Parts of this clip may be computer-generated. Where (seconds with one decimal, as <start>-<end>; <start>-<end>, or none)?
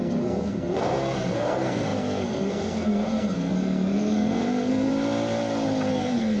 0.0-4.9; 5.9-6.4